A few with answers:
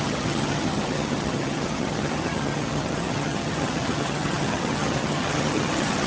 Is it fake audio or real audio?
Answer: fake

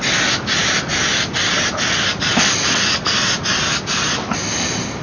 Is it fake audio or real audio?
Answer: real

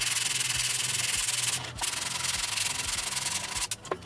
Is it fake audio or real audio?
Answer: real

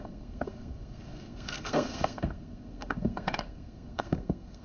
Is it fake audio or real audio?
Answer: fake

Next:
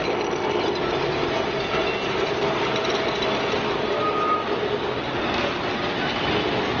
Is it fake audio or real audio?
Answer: real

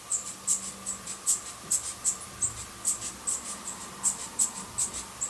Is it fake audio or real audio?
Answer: real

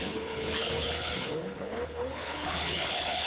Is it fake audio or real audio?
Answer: fake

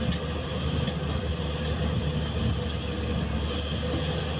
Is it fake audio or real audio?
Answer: real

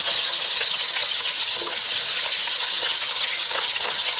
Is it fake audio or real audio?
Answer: fake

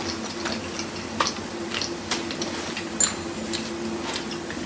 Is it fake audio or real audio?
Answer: real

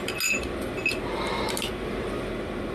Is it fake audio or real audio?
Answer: real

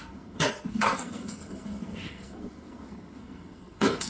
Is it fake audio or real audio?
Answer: fake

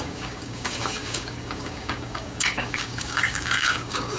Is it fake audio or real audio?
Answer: fake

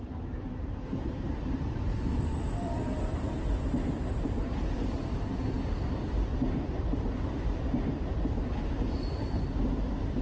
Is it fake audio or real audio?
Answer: fake